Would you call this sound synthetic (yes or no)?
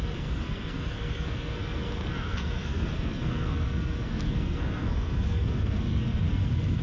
yes